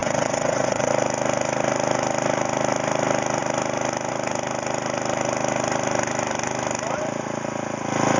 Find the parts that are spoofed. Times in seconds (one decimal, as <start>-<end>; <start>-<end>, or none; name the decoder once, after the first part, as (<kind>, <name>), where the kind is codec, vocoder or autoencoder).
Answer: 0.0-0.9 (vocoder, WaveNeXt)